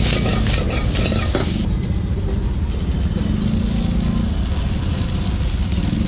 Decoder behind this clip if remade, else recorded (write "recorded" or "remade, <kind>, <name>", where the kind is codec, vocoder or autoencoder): recorded